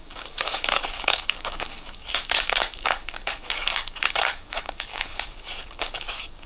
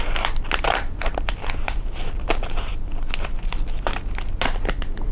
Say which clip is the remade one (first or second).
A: first